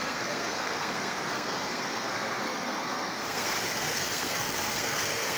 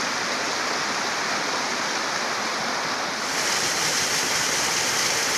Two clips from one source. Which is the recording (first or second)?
second